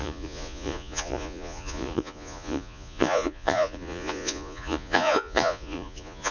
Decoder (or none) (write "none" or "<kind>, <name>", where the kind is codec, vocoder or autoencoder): vocoder, Vocos